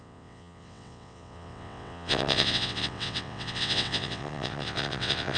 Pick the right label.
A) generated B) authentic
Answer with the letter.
A